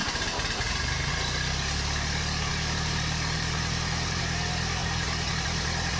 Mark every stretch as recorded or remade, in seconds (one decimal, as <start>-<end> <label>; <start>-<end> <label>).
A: 0.0-1.1 remade; 1.1-2.5 recorded; 2.5-4.2 remade; 4.2-6.0 recorded